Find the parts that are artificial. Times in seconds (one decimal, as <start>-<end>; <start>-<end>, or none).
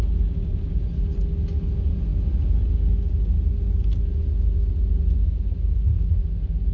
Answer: none